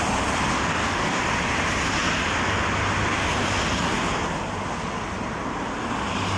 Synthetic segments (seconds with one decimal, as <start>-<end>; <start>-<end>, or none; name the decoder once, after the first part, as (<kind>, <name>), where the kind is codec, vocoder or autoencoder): 0.5-1.2 (codec, DAC)